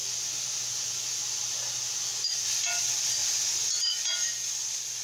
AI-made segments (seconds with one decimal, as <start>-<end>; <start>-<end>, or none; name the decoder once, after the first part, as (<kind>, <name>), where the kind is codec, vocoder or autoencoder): none